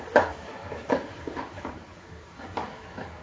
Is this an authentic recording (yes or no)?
no